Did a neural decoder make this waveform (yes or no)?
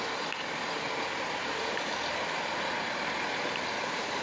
no